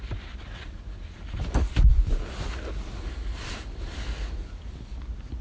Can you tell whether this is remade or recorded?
recorded